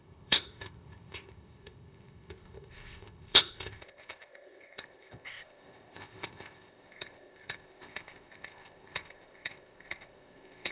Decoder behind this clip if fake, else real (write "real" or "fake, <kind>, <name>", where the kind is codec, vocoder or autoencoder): fake, codec, ZipCodec